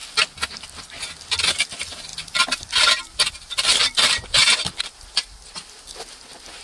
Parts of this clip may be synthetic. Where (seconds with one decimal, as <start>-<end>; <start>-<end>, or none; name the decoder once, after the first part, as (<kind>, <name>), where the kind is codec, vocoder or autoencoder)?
1.2-6.6 (vocoder, BigVGAN v2)